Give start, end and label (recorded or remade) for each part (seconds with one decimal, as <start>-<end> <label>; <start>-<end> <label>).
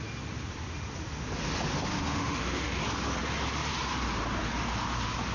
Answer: 0.0-1.9 recorded; 1.9-2.8 remade; 2.8-5.3 recorded